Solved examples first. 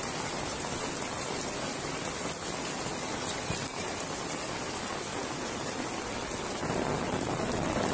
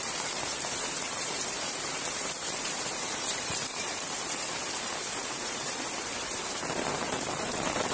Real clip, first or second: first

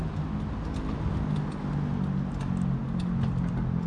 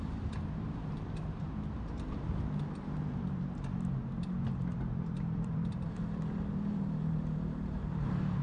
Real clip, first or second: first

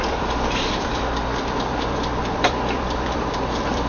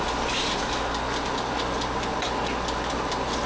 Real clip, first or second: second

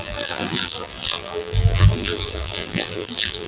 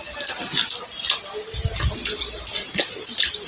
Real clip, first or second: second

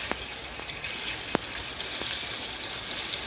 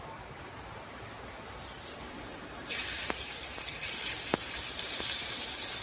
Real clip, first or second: first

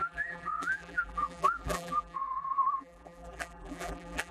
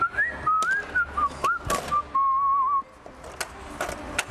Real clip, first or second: second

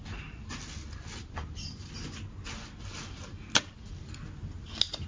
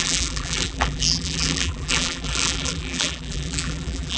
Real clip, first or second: first